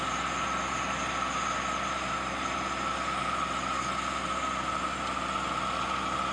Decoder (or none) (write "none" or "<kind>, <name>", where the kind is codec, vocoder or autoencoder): none